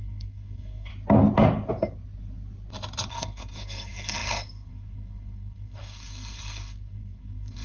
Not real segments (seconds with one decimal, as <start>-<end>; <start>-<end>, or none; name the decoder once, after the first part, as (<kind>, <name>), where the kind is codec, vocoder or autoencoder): 0.0-0.9 (codec, SNAC); 3.1-7.6